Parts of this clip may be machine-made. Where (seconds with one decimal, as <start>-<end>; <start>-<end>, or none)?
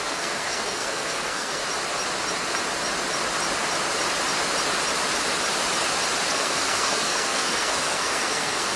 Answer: 0.0-1.6; 6.3-8.8